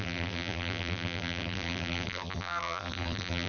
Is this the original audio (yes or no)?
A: no